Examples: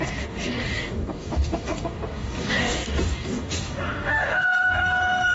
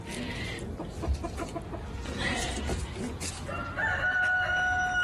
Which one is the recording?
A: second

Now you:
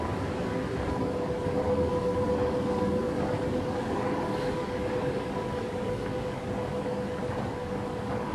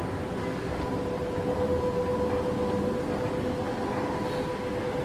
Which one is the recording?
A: second